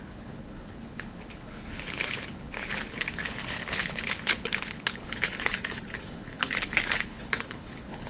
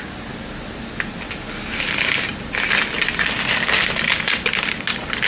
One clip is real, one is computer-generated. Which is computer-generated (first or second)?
first